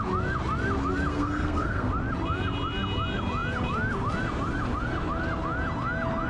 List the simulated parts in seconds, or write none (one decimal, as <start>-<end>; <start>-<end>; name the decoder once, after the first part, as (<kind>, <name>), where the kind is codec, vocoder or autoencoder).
1.1-1.9 (codec, SNAC)